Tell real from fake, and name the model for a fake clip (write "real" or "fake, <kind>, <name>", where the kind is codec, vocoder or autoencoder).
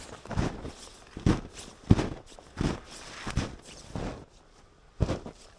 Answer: real